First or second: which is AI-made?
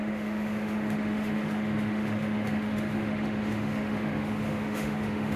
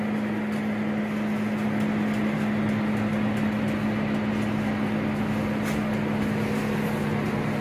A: first